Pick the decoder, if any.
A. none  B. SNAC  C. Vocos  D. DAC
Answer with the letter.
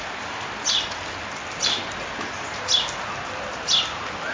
A